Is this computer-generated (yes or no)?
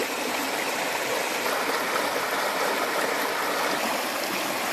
no